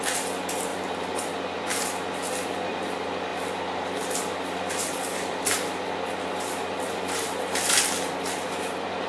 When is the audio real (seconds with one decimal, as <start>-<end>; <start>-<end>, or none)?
0.0-3.3; 4.8-9.1